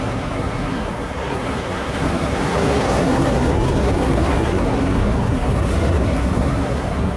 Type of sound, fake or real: fake